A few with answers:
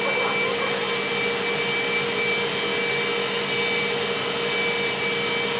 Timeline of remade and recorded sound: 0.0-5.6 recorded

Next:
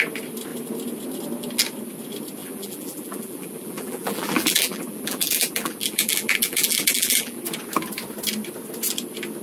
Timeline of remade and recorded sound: 0.0-2.4 recorded; 2.4-7.4 remade; 7.4-9.4 recorded

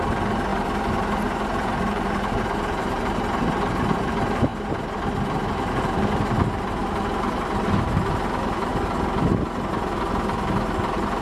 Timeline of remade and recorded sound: 0.0-6.8 remade; 6.8-7.3 recorded; 7.3-8.7 remade; 8.7-10.5 recorded; 10.5-11.2 remade

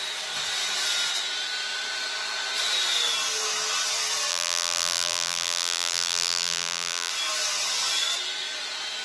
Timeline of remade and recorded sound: 0.0-4.3 recorded; 4.3-7.1 remade; 7.1-9.0 recorded

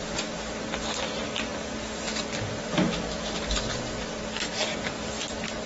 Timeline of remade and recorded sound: 0.0-5.7 recorded